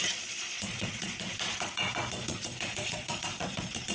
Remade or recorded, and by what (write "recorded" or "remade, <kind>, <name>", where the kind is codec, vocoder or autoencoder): remade, vocoder, Vocos